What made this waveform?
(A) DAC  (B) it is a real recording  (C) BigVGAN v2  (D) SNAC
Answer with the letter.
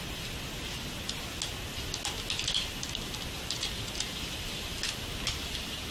B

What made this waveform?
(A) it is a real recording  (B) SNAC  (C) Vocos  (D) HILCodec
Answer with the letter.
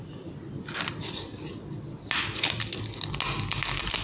A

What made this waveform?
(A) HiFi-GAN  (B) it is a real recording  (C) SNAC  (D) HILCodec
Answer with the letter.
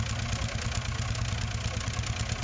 B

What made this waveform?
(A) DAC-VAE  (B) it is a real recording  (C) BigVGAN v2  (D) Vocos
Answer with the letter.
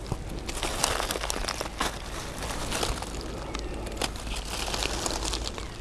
B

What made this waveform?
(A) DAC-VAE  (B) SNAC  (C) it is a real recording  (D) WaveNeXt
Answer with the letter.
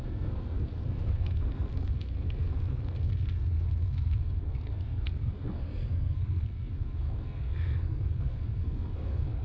B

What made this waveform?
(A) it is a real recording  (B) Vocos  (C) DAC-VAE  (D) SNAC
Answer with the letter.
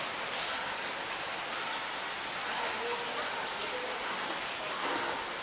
A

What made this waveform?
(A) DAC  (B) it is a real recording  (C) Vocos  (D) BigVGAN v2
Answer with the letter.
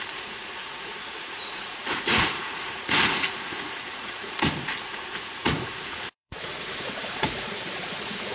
C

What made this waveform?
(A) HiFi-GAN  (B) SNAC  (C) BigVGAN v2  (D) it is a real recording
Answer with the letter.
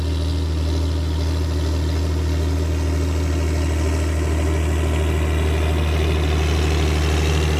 D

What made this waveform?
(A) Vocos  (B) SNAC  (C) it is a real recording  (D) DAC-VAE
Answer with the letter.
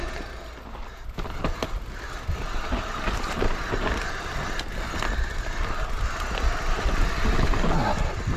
C